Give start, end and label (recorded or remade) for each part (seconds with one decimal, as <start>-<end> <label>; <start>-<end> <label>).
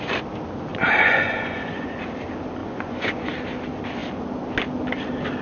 0.0-0.7 recorded; 0.7-1.9 remade; 1.9-2.6 recorded; 2.6-3.3 remade; 3.3-5.4 recorded